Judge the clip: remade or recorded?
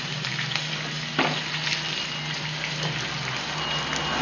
recorded